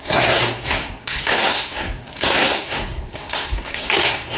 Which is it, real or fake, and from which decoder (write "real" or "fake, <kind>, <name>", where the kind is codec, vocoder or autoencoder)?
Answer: fake, codec, SNAC